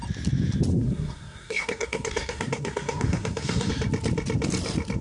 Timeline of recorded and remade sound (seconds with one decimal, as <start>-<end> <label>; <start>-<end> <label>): 0.0-0.7 recorded; 0.7-3.7 remade; 3.7-5.0 recorded